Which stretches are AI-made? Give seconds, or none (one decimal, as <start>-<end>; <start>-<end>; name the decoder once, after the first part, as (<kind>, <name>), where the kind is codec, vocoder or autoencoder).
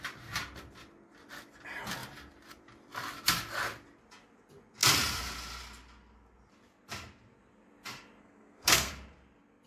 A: 8.2-8.9 (codec, SNAC)